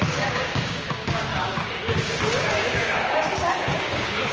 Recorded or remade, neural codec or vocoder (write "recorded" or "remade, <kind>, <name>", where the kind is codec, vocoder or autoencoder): remade, codec, DAC